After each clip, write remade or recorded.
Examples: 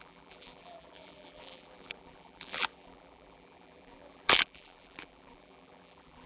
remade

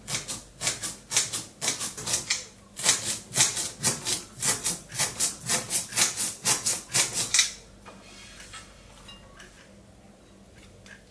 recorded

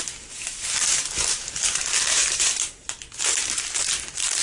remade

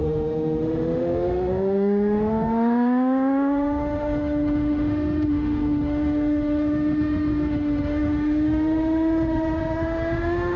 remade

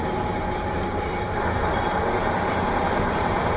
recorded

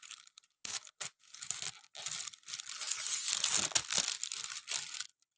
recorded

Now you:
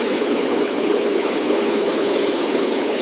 remade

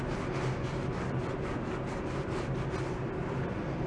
recorded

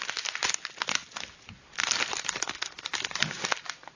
recorded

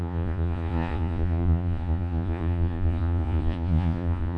remade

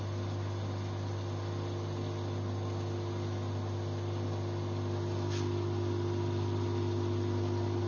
recorded